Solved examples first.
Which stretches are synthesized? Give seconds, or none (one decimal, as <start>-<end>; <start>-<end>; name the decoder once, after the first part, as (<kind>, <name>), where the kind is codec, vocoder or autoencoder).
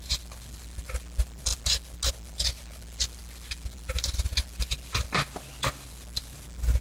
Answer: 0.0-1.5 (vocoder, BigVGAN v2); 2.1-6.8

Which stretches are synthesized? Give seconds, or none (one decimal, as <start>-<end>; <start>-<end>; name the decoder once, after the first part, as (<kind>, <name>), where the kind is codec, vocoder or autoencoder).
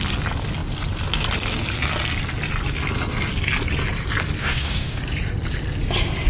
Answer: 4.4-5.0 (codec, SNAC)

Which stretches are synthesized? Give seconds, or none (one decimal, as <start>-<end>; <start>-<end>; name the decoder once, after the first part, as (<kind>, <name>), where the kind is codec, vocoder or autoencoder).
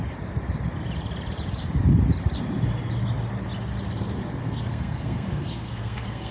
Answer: 4.4-6.3 (codec, SNAC)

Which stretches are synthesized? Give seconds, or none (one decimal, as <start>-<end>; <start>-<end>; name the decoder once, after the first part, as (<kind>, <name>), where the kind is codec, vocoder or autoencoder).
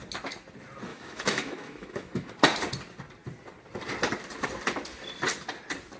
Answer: 0.9-2.3 (autoencoder, DAC-VAE)